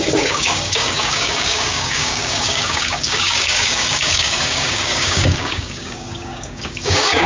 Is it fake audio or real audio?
fake